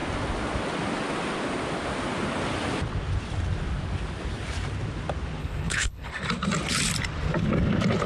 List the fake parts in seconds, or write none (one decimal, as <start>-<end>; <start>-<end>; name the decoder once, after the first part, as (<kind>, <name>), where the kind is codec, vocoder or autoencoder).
5.4-6.1 (codec, HILCodec)